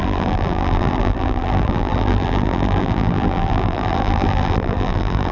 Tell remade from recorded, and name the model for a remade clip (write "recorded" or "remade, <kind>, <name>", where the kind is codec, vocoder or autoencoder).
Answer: remade, vocoder, BigVGAN v2